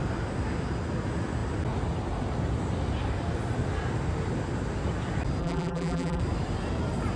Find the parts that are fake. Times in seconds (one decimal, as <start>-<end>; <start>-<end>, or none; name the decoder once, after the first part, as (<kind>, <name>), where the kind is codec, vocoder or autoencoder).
5.4-6.2 (vocoder, BigVGAN v2)